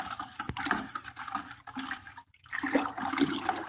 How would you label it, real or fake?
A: real